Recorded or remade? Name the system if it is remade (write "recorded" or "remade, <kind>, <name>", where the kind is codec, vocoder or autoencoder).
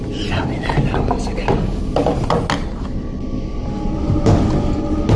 recorded